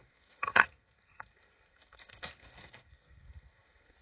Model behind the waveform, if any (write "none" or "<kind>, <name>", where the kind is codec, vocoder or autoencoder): codec, SNAC